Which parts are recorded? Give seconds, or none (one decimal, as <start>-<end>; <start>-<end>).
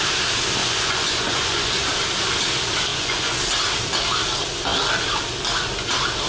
0.0-0.6; 1.7-2.9; 3.4-6.3